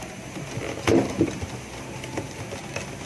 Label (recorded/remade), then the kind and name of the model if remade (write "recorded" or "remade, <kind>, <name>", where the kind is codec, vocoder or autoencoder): recorded